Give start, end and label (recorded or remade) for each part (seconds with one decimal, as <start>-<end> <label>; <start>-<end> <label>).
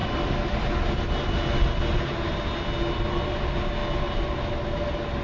0.0-5.2 recorded